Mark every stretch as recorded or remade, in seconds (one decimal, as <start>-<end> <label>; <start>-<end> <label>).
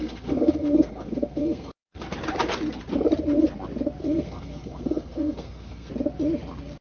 0.0-2.0 remade; 2.0-4.0 recorded; 4.0-5.9 remade; 5.9-6.8 recorded